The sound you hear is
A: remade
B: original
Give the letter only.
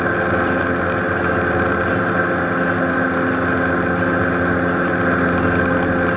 B